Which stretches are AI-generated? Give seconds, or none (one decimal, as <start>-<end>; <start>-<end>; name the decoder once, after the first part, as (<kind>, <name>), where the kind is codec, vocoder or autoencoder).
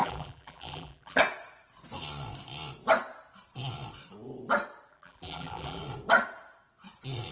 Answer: 0.0-1.2 (vocoder, BigVGAN v2); 4.9-5.8